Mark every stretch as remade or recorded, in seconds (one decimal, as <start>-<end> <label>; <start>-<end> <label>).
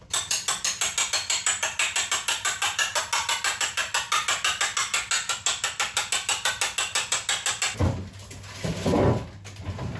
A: 0.0-10.0 recorded